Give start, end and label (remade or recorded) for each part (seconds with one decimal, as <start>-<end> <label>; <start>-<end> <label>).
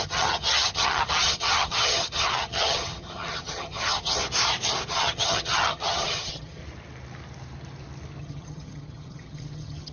0.0-4.2 remade; 4.2-4.9 recorded; 4.9-6.6 remade; 6.6-8.2 recorded; 8.2-9.9 remade